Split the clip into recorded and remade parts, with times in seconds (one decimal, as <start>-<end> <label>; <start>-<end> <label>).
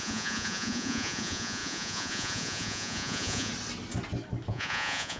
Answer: 0.0-3.5 remade; 3.5-4.5 recorded; 4.5-5.2 remade